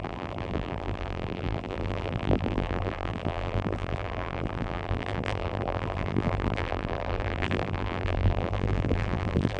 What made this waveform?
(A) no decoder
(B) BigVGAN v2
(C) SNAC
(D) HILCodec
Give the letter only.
B